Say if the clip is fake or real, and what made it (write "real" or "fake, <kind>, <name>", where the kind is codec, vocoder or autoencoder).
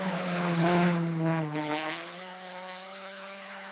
fake, codec, HILCodec